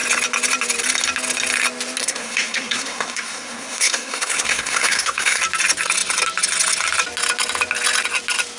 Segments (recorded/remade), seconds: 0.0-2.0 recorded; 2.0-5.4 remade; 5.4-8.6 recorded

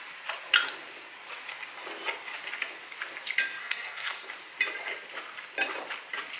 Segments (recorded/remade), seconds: 0.0-3.6 recorded; 3.6-4.3 remade; 4.3-6.4 recorded